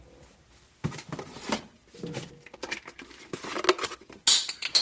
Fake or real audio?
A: real